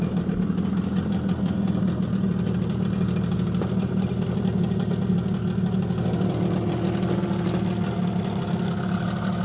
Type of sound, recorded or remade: recorded